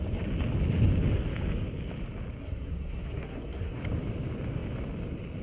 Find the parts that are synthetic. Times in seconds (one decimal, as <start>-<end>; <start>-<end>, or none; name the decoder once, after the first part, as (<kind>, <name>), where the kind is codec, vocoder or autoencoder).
2.4-3.8 (codec, SNAC)